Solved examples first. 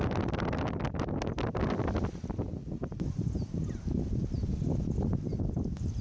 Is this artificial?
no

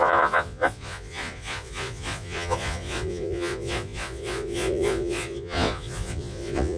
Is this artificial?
yes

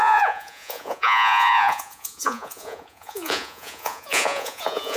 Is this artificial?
yes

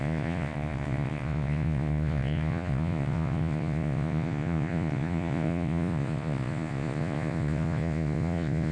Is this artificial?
yes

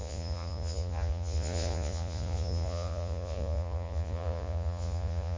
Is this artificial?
yes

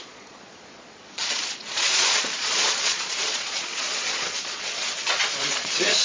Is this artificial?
yes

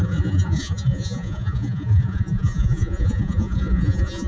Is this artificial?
yes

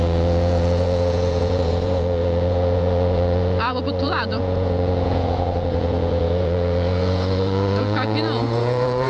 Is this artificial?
yes